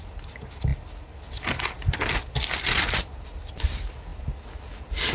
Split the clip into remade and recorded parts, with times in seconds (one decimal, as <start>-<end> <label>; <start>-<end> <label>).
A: 0.0-5.1 recorded